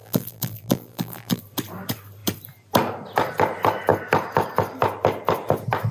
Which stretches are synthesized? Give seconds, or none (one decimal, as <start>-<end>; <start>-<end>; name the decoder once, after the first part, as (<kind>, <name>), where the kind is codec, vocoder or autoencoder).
0.0-1.4 (vocoder, BigVGAN v2)